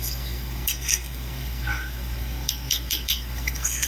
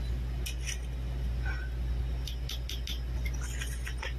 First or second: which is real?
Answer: second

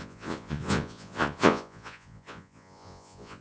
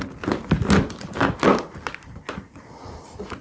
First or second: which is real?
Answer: second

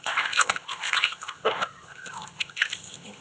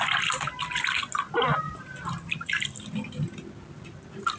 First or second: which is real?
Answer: second